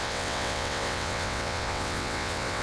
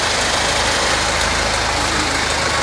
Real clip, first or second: second